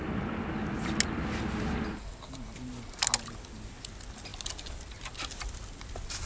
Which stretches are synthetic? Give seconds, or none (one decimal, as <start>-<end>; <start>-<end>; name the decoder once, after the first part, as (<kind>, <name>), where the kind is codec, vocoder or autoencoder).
none